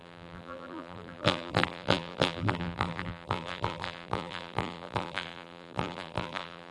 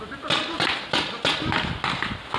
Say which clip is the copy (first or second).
first